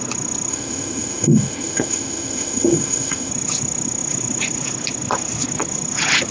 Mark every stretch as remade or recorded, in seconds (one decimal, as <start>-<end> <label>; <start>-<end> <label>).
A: 0.0-0.5 recorded; 0.5-3.3 remade; 3.3-6.3 recorded